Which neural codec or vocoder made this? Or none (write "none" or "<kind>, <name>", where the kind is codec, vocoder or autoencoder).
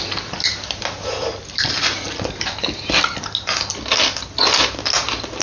none